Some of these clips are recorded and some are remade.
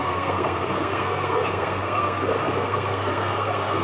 remade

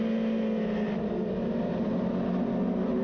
recorded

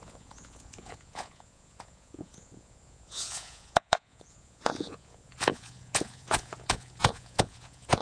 remade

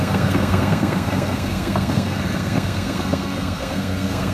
remade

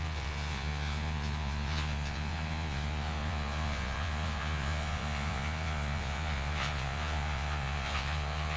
remade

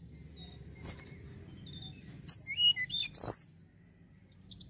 recorded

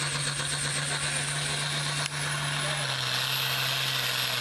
recorded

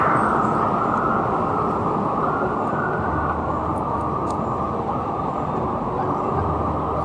remade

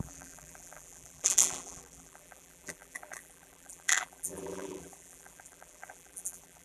remade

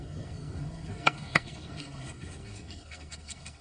remade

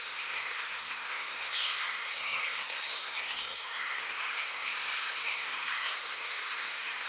remade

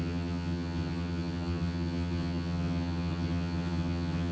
remade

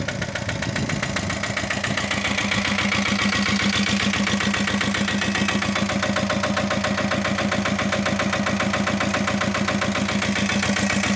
recorded